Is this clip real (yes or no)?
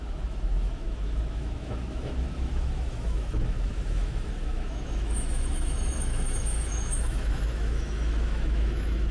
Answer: no